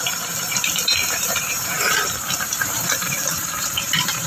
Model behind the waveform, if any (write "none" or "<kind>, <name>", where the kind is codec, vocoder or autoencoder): vocoder, BigVGAN v2